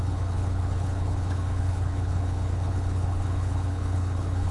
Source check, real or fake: fake